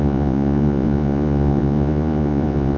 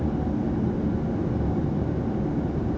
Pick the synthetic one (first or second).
first